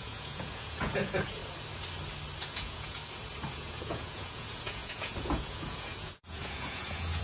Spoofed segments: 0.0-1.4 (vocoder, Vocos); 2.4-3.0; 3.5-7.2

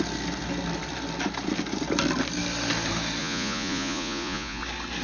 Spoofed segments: 3.2-4.6 (vocoder, Vocos)

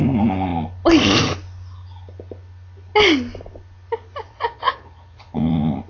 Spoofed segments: 4.3-5.5 (vocoder, Vocos)